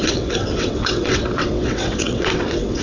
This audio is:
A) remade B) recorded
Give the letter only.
A